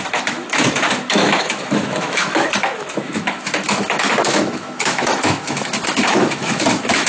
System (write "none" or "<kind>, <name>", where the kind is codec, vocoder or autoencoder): autoencoder, DAC-VAE